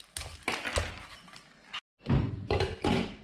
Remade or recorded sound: recorded